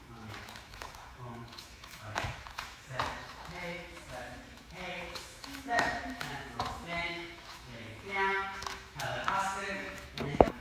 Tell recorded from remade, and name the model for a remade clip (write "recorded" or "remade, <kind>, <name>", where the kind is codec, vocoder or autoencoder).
remade, autoencoder, DAC-VAE